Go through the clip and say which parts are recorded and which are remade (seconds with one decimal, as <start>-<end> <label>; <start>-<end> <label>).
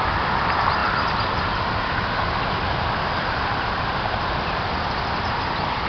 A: 0.0-5.9 remade